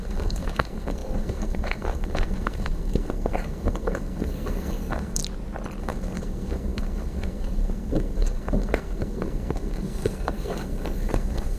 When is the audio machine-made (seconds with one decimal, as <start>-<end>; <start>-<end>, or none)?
0.0-5.2; 5.8-11.6